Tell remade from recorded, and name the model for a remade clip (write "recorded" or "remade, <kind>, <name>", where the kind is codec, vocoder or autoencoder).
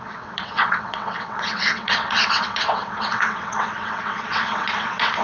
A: remade, vocoder, WaveNeXt